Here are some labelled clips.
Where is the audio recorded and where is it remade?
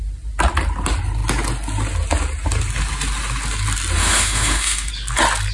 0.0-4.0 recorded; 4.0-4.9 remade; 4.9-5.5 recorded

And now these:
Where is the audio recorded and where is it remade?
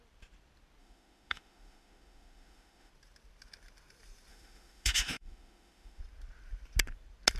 0.0-0.8 recorded; 0.8-2.9 remade; 2.9-4.3 recorded; 4.3-6.0 remade; 6.0-7.4 recorded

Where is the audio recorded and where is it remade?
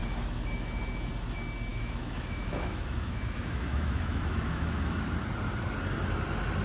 0.0-1.1 remade; 1.1-1.7 recorded; 1.7-5.0 remade; 5.0-6.6 recorded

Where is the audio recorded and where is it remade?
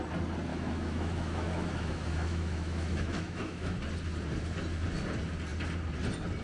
0.0-0.5 recorded; 0.5-3.8 remade; 3.8-6.4 recorded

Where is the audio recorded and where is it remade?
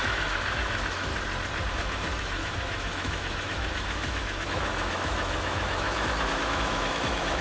0.0-1.1 remade; 1.1-1.7 recorded; 1.7-7.4 remade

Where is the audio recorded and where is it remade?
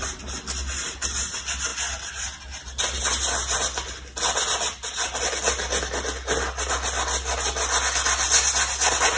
0.0-9.2 recorded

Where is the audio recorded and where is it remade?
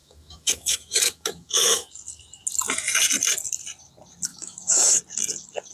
0.0-1.9 remade; 1.9-4.3 recorded; 4.3-5.0 remade; 5.0-5.7 recorded